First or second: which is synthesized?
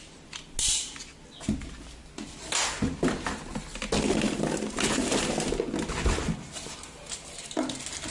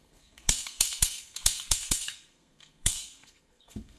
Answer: second